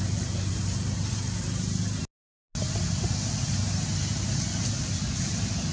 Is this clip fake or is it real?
real